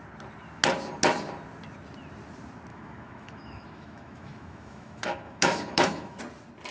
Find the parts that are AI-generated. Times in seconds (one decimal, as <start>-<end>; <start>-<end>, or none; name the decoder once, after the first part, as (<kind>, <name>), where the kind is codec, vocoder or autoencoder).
2.7-6.2 (autoencoder, DAC-VAE)